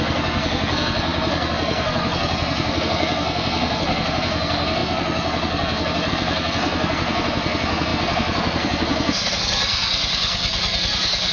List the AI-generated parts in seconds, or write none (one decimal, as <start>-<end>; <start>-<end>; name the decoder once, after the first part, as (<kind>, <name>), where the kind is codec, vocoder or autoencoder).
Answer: 0.0-11.3 (codec, SNAC)